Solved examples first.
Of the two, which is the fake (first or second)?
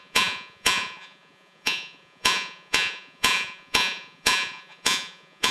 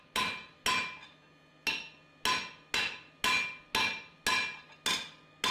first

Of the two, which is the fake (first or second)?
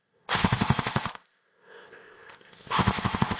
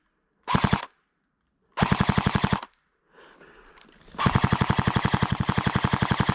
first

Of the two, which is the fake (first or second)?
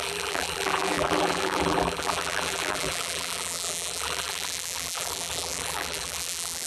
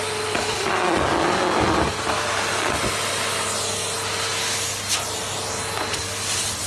first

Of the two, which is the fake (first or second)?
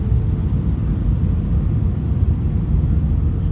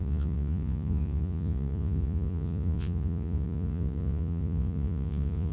second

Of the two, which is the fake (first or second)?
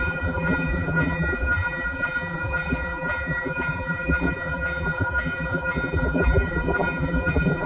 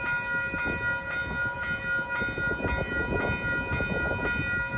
first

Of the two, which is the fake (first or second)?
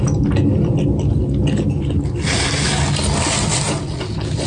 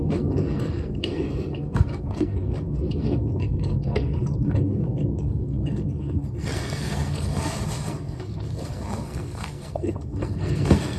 second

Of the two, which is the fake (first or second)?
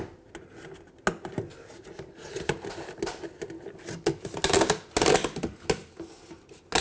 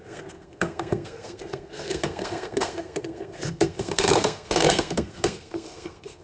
second